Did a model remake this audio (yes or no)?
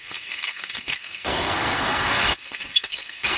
yes